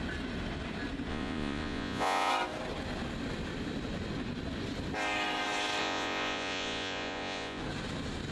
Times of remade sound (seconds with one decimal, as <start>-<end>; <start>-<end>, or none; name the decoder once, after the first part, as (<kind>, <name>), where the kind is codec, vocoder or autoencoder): 1.1-2.3 (vocoder, Vocos); 5.8-7.6